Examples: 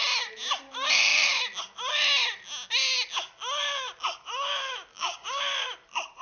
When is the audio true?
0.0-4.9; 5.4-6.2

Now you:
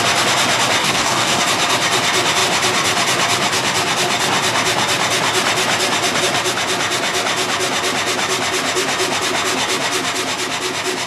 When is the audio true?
0.0-0.8; 1.4-11.1

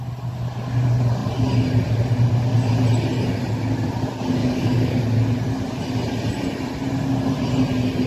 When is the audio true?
0.0-4.4; 5.0-8.1

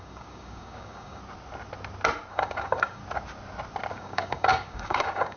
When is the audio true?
1.2-2.3; 3.0-3.9

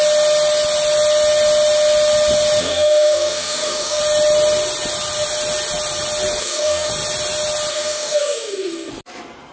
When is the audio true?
0.0-2.6; 4.0-6.4; 6.9-7.7; 8.9-9.5

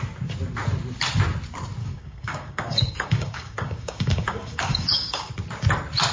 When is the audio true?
0.0-1.8; 5.3-6.1